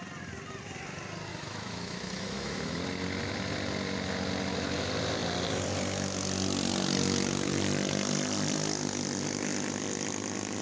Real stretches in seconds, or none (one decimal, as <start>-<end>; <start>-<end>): 0.0-1.3; 2.8-10.6